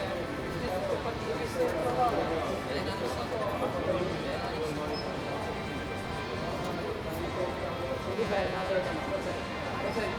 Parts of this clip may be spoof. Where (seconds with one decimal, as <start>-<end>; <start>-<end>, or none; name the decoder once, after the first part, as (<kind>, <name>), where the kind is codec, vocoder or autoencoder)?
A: 8.1-8.7 (vocoder, Vocos)